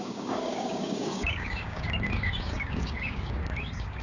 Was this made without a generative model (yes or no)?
no